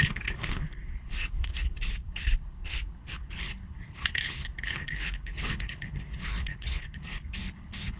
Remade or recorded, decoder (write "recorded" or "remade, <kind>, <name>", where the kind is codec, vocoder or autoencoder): remade, codec, HILCodec